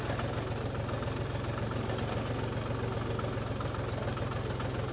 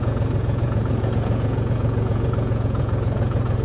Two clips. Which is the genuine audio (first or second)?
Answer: first